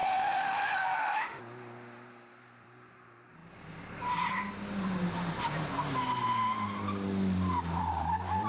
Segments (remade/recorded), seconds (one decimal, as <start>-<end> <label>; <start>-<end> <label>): 0.0-1.4 remade; 1.4-8.5 recorded